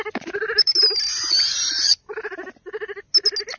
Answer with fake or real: real